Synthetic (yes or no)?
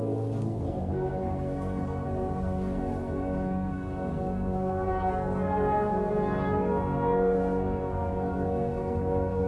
yes